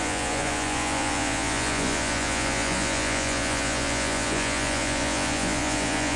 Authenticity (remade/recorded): remade